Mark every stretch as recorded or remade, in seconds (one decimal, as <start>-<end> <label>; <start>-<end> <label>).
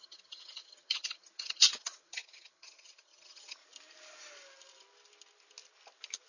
0.0-3.6 remade; 3.6-6.3 recorded